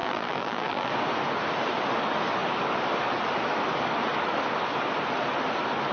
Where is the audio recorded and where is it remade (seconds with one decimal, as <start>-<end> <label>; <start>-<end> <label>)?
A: 0.0-0.9 remade; 0.9-5.9 recorded